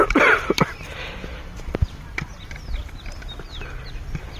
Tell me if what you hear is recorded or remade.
remade